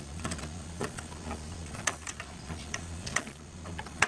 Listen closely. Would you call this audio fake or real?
fake